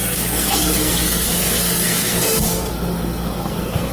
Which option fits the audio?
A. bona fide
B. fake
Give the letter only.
B